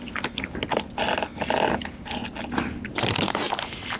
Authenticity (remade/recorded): recorded